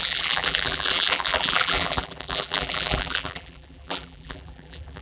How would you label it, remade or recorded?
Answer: remade